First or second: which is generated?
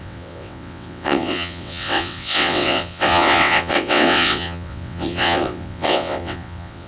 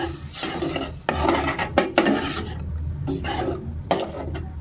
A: first